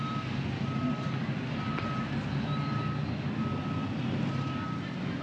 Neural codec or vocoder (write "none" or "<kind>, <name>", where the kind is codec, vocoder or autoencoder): none